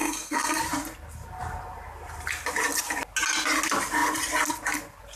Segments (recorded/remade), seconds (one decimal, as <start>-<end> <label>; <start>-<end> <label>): 0.0-0.6 remade; 0.6-5.2 recorded